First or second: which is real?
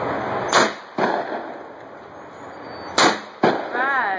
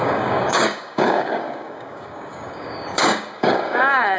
first